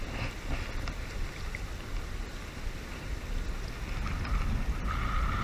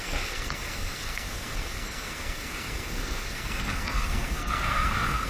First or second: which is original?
first